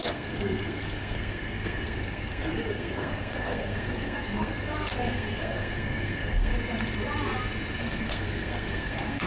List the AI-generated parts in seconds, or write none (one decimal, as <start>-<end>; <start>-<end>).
0.0-6.5; 7.8-9.3

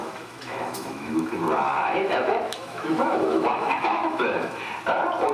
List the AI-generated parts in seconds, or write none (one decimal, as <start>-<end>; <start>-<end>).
0.0-1.4; 1.8-4.6

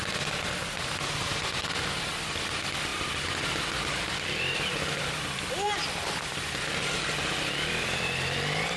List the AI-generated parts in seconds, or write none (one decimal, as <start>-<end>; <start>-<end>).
none

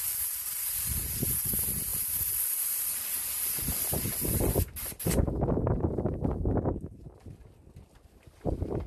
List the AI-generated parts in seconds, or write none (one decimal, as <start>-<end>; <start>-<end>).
none

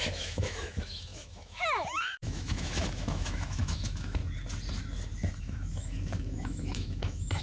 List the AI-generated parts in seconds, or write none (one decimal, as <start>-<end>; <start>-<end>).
0.0-4.2; 5.4-7.4

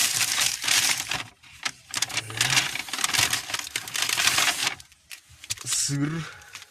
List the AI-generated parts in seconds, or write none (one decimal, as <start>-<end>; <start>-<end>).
0.0-2.2; 4.6-5.7

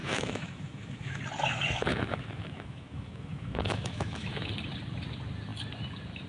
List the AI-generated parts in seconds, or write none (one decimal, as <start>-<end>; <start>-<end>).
0.0-1.2; 1.9-4.5